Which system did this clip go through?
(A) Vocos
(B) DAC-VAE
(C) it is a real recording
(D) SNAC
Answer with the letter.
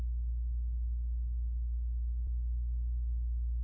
C